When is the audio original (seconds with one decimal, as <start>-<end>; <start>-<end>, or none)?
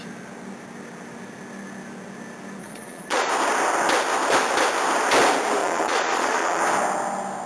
0.0-2.6; 3.3-5.6; 6.6-7.5